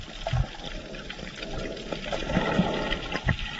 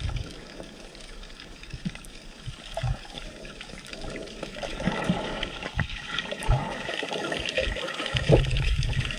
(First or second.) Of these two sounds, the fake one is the second